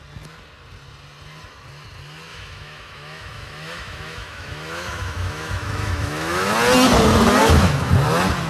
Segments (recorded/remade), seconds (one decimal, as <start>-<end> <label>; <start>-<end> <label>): 0.0-2.3 recorded; 2.3-6.5 remade; 6.5-7.4 recorded; 7.4-7.9 remade; 7.9-8.5 recorded